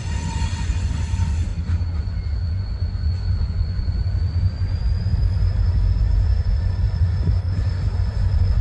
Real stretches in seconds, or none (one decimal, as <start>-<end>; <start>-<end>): 1.5-2.0; 5.1-6.0